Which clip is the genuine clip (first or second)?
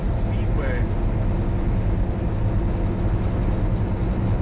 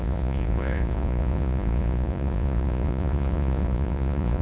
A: first